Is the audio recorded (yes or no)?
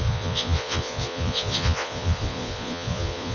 no